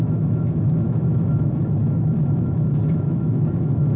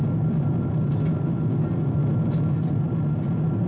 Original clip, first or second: second